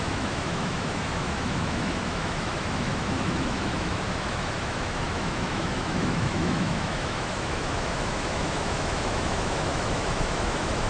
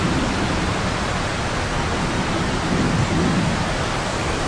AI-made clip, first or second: first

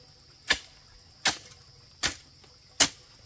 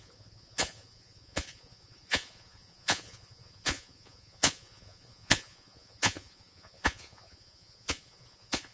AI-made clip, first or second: second